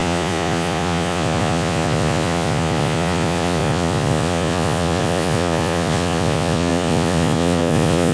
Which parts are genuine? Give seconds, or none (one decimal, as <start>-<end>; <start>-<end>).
none